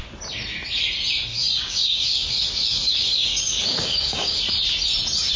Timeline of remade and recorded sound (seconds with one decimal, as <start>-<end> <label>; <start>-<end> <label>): 0.0-1.3 recorded; 1.3-4.4 remade; 4.4-5.4 recorded